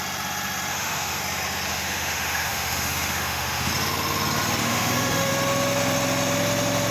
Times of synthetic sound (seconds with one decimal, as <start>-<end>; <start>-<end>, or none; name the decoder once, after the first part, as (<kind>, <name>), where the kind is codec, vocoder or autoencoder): 0.7-1.2 (autoencoder, DAC-VAE); 1.7-3.7; 4.6-5.3

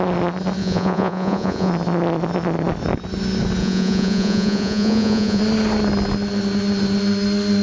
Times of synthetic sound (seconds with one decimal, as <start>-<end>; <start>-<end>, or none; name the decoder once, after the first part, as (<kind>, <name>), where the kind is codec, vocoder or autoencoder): 0.6-1.7 (vocoder, Vocos); 3.6-5.4